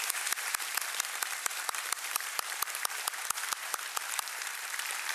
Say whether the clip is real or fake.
fake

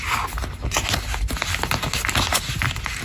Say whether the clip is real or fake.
real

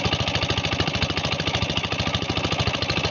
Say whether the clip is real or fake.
real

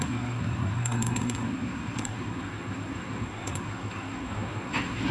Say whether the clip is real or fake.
fake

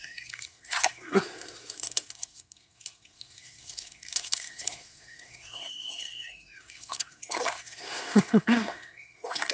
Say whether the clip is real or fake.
fake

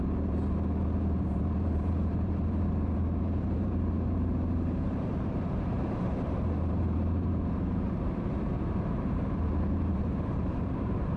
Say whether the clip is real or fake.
fake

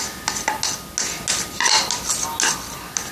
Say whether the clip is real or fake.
real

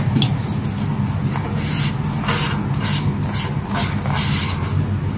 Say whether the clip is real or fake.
real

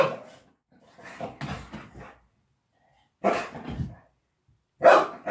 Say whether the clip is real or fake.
real